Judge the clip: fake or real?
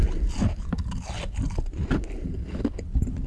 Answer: real